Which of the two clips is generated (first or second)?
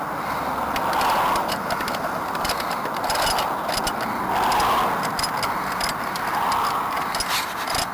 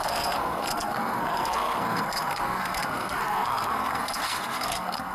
second